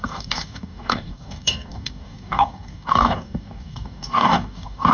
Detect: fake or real fake